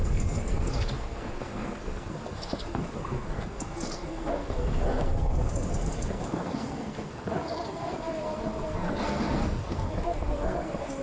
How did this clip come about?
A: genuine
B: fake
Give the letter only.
B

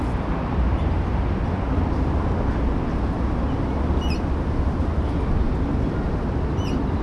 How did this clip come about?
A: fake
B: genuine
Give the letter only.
B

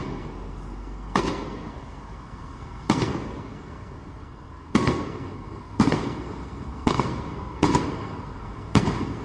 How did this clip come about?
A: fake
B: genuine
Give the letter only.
A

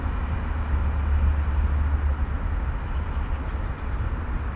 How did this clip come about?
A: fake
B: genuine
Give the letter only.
B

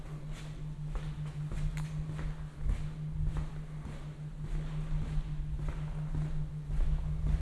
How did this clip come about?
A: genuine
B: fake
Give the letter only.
A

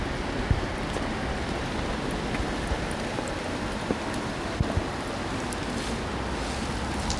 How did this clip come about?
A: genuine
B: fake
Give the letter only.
A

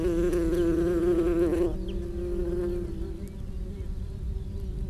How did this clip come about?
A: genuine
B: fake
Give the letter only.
A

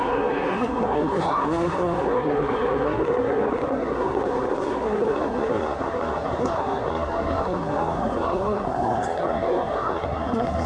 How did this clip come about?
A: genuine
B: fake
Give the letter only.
B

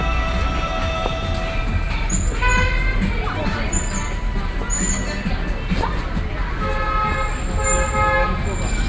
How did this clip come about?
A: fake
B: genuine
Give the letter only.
B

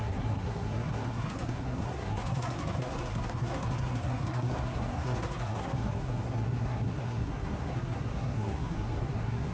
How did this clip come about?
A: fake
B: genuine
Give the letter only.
A